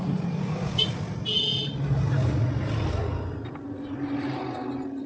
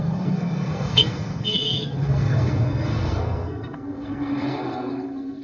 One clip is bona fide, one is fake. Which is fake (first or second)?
second